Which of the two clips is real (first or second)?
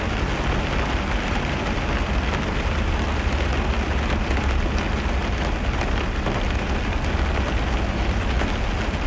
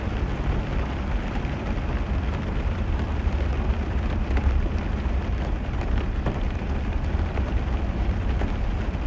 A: first